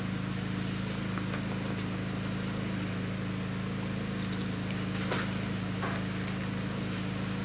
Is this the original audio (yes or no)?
yes